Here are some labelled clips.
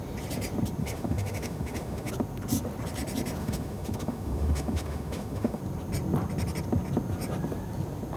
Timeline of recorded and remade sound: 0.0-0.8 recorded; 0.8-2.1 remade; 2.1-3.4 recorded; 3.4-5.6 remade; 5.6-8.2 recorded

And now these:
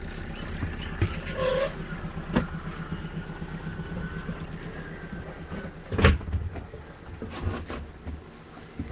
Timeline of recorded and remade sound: 0.0-8.9 recorded

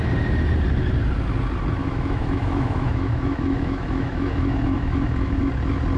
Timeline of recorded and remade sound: 0.0-1.8 recorded; 1.8-5.4 remade; 5.4-6.0 recorded

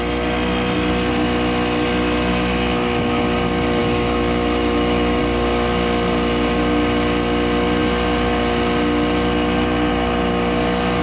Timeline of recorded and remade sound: 0.0-2.3 recorded; 2.3-3.2 remade; 3.2-3.8 recorded; 3.8-5.2 remade; 5.2-11.0 recorded

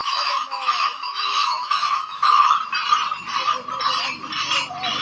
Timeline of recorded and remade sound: 0.0-2.6 remade; 2.6-5.0 recorded